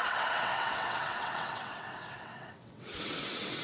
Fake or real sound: fake